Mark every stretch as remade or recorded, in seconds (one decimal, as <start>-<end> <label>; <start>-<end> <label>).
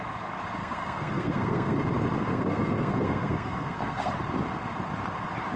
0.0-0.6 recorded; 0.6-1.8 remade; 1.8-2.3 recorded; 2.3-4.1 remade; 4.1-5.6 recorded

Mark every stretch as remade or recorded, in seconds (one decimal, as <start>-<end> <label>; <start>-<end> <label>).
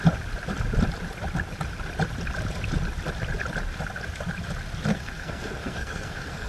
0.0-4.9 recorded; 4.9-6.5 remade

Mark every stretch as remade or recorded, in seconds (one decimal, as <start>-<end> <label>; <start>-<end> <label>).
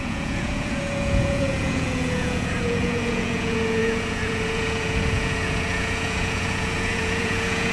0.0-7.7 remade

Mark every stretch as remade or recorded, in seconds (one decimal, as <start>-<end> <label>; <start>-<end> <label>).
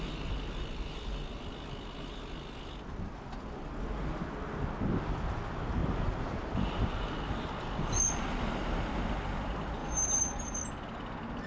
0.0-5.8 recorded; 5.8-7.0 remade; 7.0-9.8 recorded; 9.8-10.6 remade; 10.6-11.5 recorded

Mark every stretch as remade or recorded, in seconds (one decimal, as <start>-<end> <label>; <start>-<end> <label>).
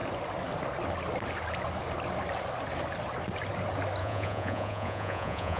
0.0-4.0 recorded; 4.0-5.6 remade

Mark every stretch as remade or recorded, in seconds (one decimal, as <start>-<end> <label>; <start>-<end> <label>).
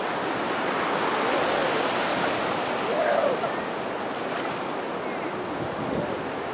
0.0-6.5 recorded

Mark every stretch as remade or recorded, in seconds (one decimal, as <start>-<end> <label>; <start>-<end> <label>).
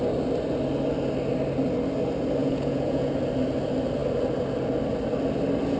0.0-2.4 recorded; 2.4-3.1 remade; 3.1-5.8 recorded